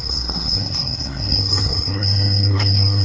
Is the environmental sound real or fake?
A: fake